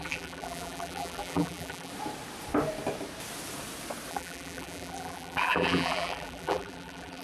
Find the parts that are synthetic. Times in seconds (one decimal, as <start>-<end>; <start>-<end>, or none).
0.0-1.9; 4.1-7.2